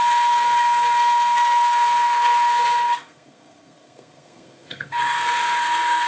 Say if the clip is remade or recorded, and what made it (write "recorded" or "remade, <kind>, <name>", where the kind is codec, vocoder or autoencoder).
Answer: remade, codec, SNAC